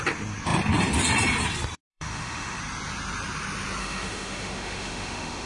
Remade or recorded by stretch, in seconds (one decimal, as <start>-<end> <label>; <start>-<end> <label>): 0.0-1.9 recorded; 1.9-2.6 remade; 2.6-3.8 recorded; 3.8-5.5 remade